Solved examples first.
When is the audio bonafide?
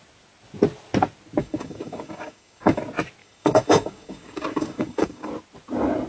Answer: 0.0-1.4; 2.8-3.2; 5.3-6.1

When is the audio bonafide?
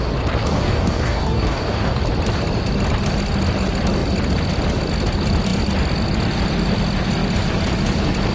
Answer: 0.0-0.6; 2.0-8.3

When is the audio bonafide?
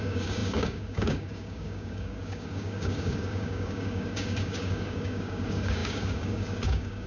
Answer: none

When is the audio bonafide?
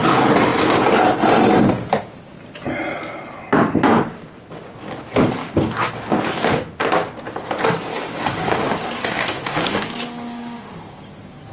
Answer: 0.0-5.4; 5.9-7.9; 11.1-11.5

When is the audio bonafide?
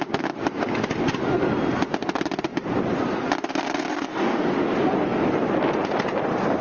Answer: 0.0-3.9; 4.5-6.6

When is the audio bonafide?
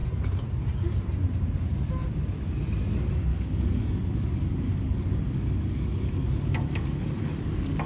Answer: 0.0-3.3